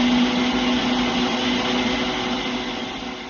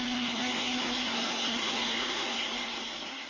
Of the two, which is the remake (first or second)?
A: second